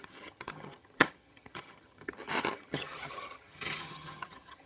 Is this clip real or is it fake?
fake